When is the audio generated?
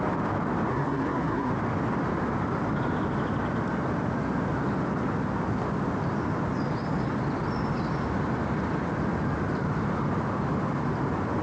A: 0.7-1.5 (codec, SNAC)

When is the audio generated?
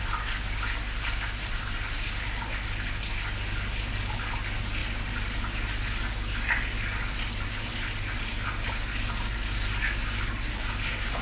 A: none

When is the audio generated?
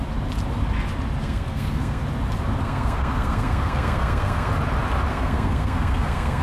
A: 1.2-2.0 (codec, SNAC); 2.6-4.5; 5.1-6.4